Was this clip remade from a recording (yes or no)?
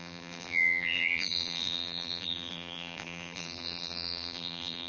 yes